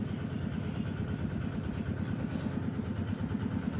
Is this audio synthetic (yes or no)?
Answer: no